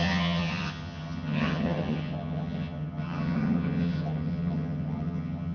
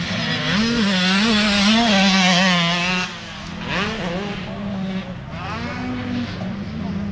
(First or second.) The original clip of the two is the second